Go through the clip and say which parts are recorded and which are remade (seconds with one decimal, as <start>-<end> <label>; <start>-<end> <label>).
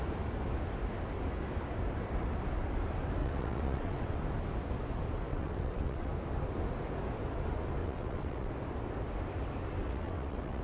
0.0-3.2 recorded; 3.2-4.2 remade; 4.2-5.3 recorded; 5.3-6.1 remade; 6.1-7.8 recorded; 7.8-8.5 remade; 8.5-9.8 recorded; 9.8-10.6 remade